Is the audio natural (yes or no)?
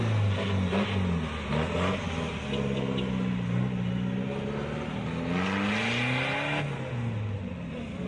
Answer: yes